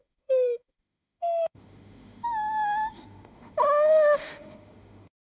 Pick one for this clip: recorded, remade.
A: remade